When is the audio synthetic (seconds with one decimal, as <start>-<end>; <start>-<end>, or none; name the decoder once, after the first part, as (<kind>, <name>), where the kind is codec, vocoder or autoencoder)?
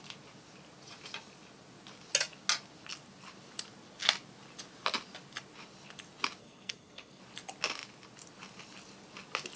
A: 6.4-7.2 (codec, SNAC)